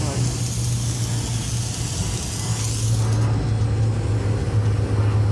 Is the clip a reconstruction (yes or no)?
no